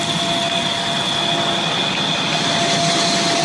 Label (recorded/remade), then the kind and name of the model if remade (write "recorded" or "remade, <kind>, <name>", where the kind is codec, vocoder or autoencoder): recorded